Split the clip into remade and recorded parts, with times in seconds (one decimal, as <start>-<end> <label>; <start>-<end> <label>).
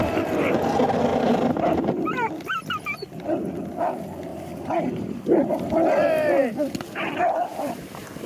0.0-1.1 recorded; 1.1-2.3 remade; 2.3-4.3 recorded; 4.3-5.5 remade; 5.5-7.5 recorded; 7.5-8.3 remade